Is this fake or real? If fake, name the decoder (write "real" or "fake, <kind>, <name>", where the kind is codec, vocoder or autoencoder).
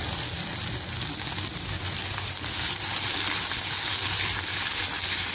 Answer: real